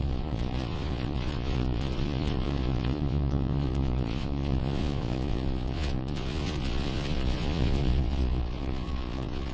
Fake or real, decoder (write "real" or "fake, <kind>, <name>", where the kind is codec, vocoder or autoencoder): fake, vocoder, Vocos